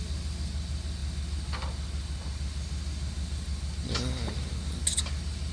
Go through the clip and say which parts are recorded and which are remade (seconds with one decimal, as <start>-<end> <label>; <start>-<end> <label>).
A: 0.0-5.5 recorded